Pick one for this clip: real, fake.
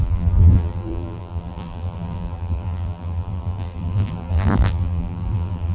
fake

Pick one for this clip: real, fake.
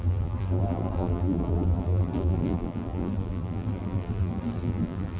fake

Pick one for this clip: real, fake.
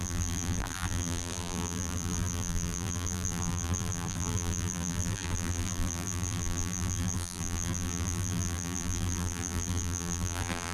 fake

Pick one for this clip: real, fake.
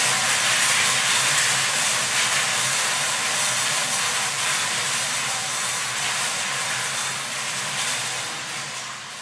fake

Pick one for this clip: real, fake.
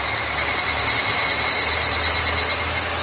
real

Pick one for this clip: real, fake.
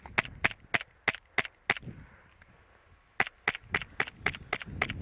real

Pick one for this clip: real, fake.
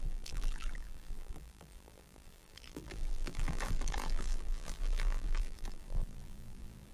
fake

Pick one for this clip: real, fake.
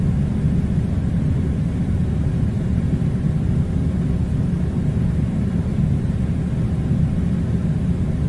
real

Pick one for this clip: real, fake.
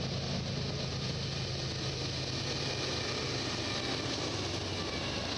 real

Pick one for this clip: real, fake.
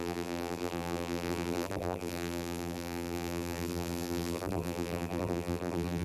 fake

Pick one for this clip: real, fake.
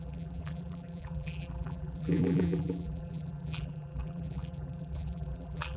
fake